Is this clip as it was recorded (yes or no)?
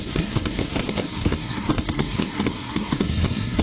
no